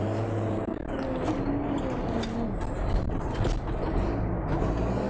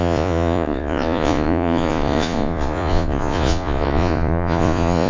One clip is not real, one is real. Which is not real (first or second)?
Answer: second